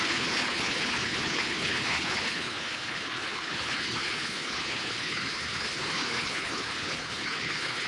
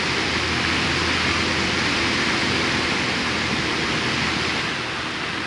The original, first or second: second